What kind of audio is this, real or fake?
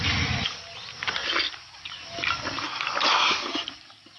real